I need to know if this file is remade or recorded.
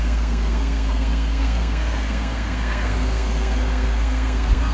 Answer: remade